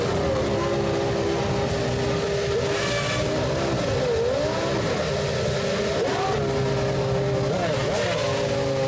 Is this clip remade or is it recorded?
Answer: recorded